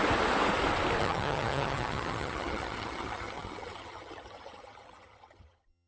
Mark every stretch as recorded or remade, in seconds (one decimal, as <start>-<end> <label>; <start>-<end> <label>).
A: 0.0-1.0 recorded; 1.0-5.9 remade